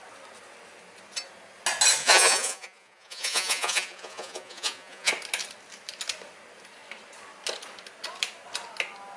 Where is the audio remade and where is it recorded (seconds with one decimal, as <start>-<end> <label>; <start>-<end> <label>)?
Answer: 0.0-2.0 recorded; 2.0-5.1 remade; 5.1-9.2 recorded